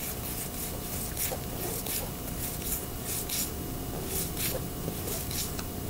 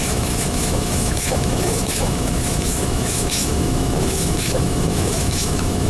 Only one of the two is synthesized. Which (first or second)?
second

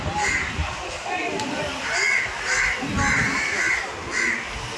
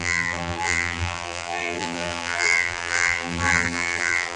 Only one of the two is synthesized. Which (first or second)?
second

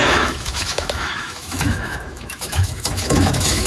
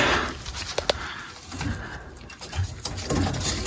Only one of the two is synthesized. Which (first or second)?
first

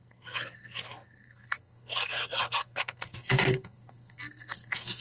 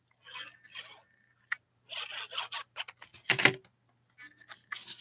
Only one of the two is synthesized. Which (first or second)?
first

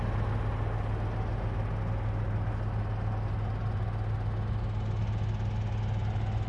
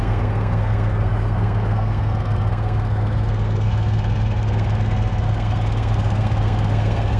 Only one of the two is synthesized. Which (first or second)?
second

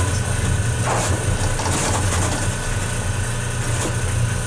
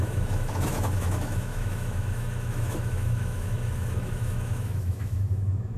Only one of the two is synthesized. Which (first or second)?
second